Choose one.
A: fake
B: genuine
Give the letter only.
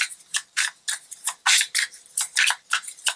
B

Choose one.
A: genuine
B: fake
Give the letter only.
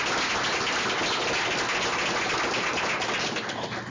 A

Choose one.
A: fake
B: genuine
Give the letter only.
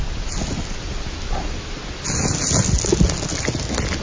B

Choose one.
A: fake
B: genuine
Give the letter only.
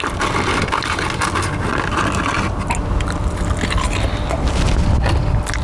B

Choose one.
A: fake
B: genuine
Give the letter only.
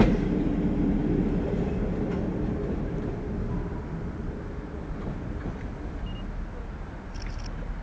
B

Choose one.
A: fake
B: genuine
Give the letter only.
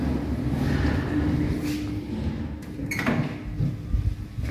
B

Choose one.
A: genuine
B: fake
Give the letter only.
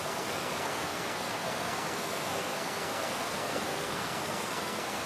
B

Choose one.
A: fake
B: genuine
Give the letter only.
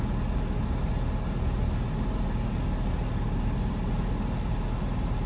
B